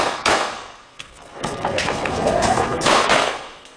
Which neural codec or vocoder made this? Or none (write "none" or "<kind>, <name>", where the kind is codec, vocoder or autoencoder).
codec, SNAC